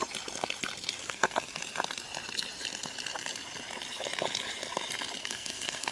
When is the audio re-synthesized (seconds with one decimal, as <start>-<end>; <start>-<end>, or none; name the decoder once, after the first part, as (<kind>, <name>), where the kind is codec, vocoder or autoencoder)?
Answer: 1.0-1.6 (codec, SNAC); 5.2-5.9